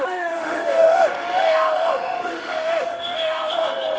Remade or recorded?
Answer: remade